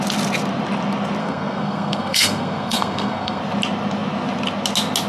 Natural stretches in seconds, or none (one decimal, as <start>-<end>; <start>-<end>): 0.0-1.2; 3.4-5.1